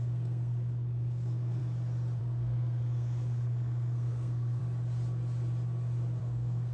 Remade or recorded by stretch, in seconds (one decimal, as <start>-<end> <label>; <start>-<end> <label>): 0.0-1.6 remade; 1.6-2.2 recorded; 2.2-4.6 remade; 4.6-6.2 recorded; 6.2-6.7 remade